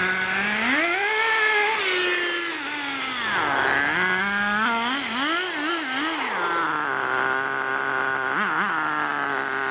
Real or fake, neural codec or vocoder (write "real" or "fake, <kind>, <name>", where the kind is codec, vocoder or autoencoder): real